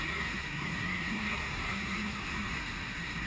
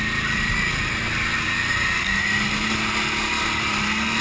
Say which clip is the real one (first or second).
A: second